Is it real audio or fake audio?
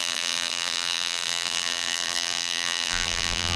fake